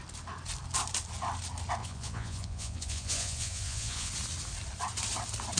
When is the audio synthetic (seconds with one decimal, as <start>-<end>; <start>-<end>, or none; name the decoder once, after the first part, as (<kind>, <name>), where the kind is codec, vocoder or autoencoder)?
1.8-4.1 (vocoder, Vocos)